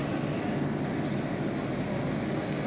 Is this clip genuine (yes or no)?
yes